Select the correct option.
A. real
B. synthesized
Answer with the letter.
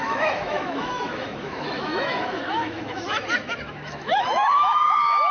B